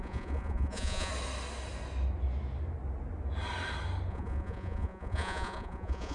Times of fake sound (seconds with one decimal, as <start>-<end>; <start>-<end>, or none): 0.0-1.1; 4.1-6.1